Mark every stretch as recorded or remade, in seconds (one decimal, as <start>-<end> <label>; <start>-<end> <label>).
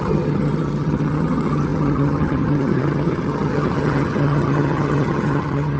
0.0-5.8 remade